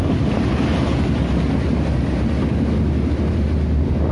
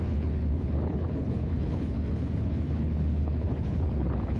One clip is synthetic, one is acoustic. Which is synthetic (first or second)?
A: second